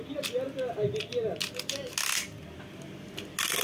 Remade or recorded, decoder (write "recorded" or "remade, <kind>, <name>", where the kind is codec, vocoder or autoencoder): recorded